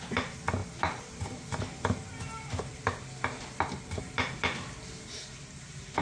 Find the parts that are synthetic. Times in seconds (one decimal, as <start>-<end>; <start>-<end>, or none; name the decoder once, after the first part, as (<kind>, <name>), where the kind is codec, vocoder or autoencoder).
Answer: none